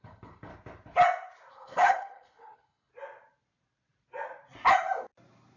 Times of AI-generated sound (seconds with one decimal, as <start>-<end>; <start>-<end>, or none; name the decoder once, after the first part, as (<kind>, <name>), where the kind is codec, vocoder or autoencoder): 0.0-0.5 (codec, HILCodec); 1.5-2.9

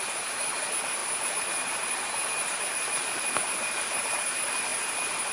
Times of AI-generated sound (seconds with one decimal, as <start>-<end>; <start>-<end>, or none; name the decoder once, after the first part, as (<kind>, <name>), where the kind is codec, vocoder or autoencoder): none

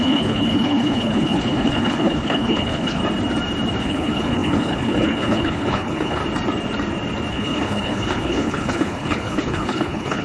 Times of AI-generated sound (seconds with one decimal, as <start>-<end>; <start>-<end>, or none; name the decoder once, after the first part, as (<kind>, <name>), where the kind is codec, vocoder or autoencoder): 0.0-3.0 (codec, HILCodec); 3.8-6.2; 7.3-10.2

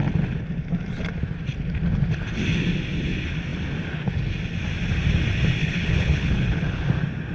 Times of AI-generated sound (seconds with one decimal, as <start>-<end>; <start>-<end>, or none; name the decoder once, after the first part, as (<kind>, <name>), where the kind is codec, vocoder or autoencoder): 5.6-6.8 (codec, HILCodec)

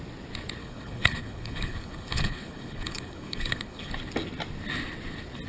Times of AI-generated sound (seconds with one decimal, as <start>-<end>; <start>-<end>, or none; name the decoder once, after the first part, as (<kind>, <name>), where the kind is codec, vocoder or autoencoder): 0.6-3.9 (codec, HILCodec)

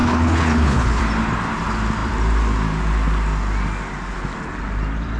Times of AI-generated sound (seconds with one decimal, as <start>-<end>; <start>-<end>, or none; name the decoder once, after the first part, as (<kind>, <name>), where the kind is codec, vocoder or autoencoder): 0.0-1.0 (codec, HILCodec)

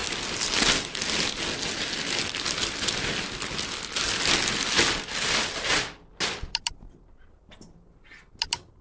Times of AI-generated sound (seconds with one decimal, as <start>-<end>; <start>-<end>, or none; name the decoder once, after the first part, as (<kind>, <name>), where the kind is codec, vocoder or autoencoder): none